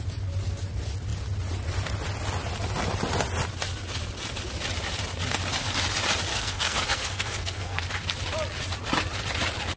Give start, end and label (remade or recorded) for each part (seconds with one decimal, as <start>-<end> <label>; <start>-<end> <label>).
0.0-6.3 recorded; 6.3-7.8 remade; 7.8-9.8 recorded